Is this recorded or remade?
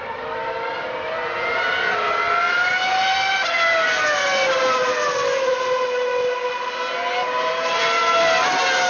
recorded